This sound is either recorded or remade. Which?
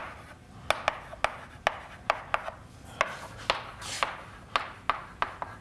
recorded